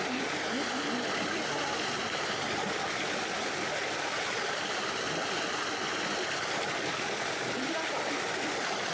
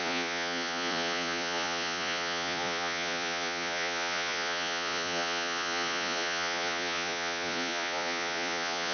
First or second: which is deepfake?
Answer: second